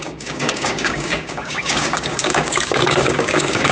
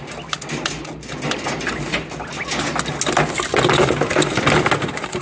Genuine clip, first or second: second